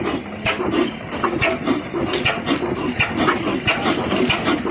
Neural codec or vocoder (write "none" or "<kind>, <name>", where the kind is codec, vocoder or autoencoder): none